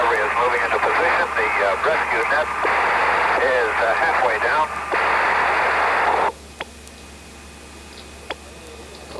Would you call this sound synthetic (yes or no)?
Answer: no